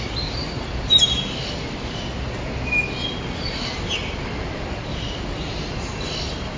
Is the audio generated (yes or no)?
no